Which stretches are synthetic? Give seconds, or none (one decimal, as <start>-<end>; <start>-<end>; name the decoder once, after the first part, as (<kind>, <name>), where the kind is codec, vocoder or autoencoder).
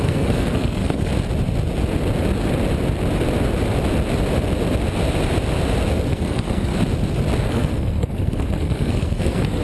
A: 0.0-1.1 (codec, SNAC); 6.1-6.7; 7.4-9.6